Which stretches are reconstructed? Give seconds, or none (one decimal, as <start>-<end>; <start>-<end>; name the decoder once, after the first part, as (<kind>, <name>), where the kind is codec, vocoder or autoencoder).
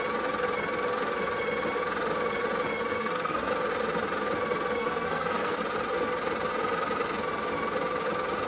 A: 2.9-3.5 (codec, SNAC); 4.8-5.6